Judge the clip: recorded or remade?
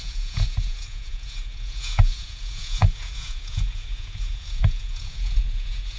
remade